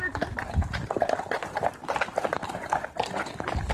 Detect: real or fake fake